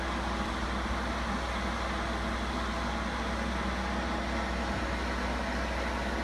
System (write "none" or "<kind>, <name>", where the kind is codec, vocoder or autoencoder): none